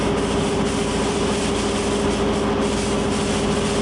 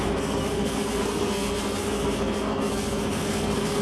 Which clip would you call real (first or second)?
first